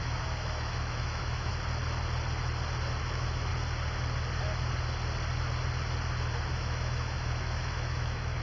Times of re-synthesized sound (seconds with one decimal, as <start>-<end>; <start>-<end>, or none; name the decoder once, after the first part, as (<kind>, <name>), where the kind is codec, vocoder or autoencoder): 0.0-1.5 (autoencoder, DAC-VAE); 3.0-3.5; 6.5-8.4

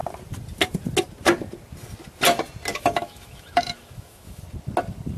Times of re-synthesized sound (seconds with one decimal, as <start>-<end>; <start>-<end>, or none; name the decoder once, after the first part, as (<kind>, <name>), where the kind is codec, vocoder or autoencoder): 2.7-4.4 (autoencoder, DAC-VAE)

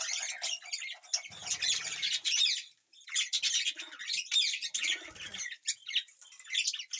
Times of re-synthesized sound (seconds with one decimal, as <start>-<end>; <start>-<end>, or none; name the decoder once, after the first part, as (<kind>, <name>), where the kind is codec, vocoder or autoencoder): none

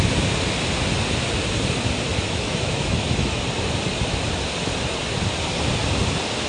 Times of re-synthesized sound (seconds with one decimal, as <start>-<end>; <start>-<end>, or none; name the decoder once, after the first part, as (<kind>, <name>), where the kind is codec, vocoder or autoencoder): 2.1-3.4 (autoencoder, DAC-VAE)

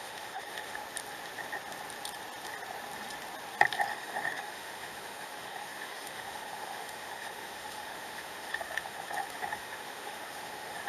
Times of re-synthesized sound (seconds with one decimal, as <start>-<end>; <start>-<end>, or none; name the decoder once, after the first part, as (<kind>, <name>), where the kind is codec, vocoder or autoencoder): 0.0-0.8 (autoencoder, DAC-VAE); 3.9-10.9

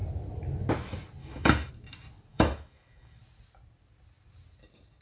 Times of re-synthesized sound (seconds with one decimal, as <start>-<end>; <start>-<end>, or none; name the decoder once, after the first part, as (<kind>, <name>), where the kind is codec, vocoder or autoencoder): 1.2-1.7 (autoencoder, DAC-VAE); 2.3-3.2

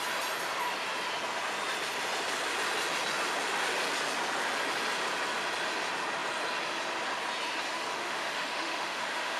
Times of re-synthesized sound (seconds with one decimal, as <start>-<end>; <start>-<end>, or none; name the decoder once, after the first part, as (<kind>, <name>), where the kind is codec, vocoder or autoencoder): 7.9-9.4 (autoencoder, DAC-VAE)

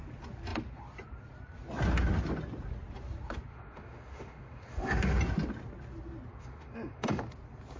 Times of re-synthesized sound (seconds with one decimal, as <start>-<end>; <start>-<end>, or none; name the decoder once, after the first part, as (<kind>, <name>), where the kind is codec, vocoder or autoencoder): 3.5-5.2 (autoencoder, DAC-VAE); 6.3-7.2